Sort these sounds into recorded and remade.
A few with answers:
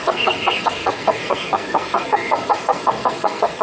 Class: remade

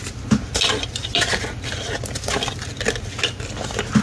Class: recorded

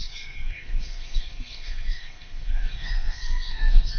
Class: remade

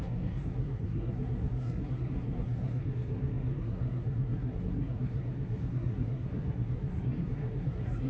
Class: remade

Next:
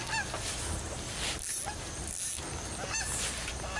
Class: recorded